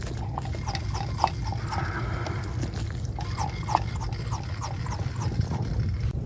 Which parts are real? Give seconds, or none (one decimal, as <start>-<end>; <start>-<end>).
0.0-6.3